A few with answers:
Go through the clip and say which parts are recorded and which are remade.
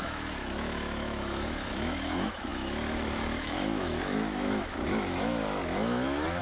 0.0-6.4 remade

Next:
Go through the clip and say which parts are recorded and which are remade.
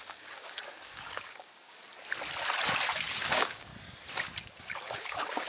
0.0-1.9 remade; 1.9-3.2 recorded; 3.2-3.7 remade; 3.7-4.6 recorded; 4.6-5.5 remade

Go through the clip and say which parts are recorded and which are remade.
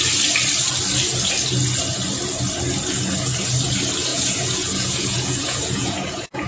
0.0-4.1 recorded; 4.1-6.5 remade